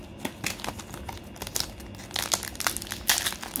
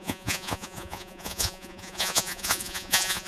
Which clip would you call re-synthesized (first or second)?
second